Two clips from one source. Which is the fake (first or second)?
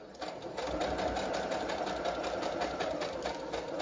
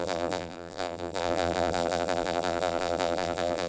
second